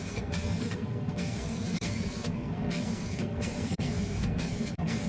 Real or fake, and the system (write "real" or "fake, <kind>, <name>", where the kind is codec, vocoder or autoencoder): fake, codec, SNAC